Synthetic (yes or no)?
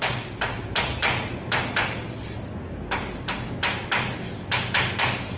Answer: no